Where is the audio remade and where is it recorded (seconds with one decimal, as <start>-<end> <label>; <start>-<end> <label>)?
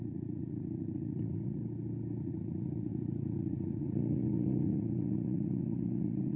0.0-1.6 remade; 1.6-2.2 recorded; 2.2-6.4 remade